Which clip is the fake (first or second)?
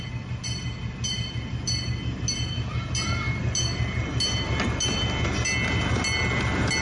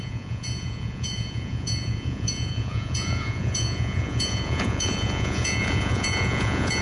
second